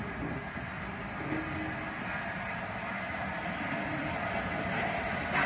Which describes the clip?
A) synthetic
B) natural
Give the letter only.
B